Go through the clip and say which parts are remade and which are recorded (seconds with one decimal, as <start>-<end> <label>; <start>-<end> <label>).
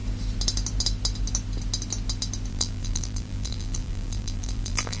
0.0-2.5 recorded; 2.5-5.0 remade